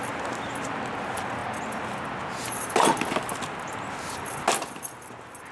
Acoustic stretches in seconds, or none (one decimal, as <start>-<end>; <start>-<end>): 0.0-5.5